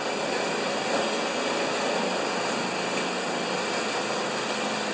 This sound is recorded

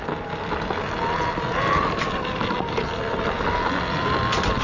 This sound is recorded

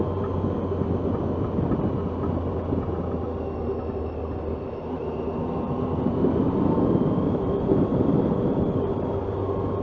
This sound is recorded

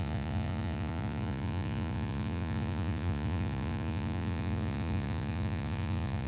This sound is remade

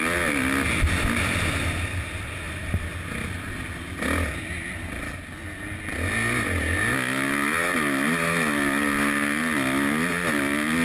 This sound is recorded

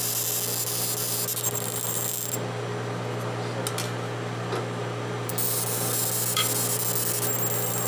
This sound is recorded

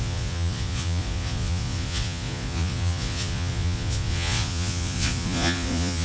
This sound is remade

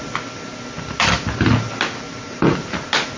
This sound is recorded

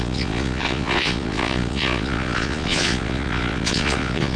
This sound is remade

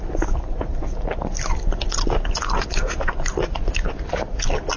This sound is recorded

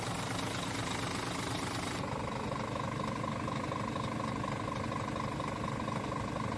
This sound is recorded